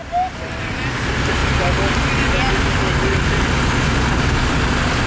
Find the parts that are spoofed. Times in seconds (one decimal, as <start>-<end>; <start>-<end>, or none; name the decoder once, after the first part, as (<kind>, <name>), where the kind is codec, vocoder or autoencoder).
none